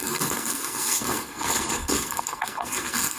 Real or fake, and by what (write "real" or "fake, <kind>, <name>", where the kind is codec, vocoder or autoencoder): fake, codec, SNAC